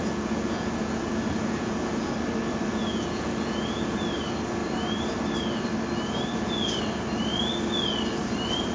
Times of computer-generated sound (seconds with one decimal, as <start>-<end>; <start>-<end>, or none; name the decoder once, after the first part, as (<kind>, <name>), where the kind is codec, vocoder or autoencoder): 0.0-2.1 (vocoder, Vocos); 2.7-4.0